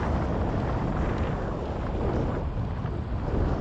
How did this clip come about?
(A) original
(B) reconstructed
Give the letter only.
A